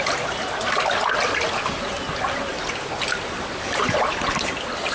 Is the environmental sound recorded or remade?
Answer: recorded